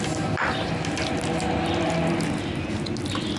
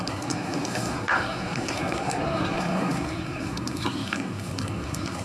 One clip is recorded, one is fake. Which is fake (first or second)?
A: second